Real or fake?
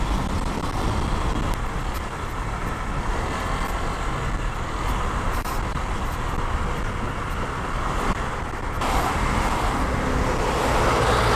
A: real